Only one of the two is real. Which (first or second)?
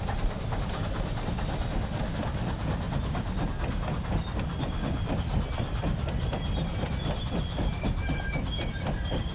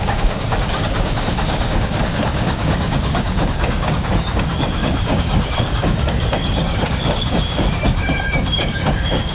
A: first